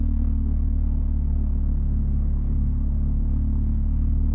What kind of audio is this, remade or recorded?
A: remade